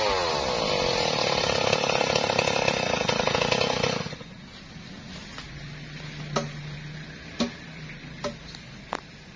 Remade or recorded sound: recorded